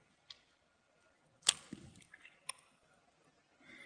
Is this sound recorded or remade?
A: recorded